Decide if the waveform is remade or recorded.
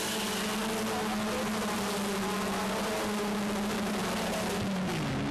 recorded